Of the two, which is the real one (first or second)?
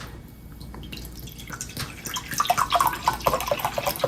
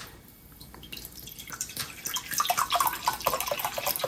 first